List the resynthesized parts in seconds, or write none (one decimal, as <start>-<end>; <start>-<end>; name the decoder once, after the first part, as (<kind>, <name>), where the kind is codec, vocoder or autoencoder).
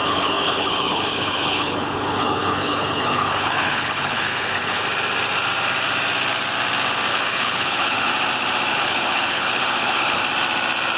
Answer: 0.0-4.8 (codec, HILCodec); 7.1-8.1; 8.7-10.2